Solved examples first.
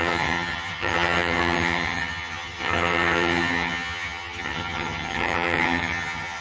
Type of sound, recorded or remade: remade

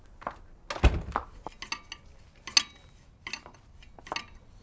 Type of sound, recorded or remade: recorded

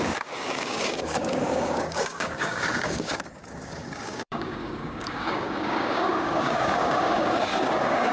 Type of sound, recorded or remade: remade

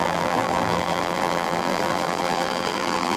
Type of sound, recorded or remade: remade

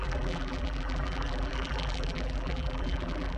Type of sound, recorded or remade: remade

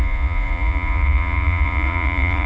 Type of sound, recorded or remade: remade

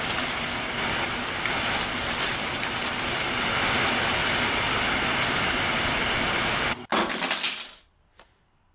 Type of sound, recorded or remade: recorded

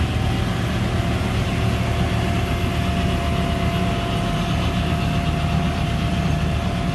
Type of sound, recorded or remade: recorded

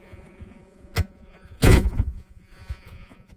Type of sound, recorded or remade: remade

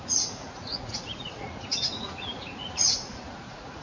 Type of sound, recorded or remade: remade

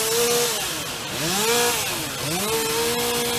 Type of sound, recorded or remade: recorded